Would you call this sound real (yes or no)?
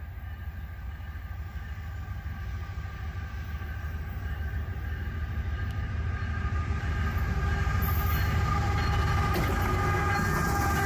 yes